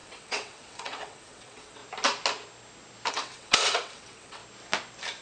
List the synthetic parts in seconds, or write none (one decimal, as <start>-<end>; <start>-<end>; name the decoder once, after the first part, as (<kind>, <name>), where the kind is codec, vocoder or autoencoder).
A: 0.0-1.8 (vocoder, WaveNeXt); 3.1-4.4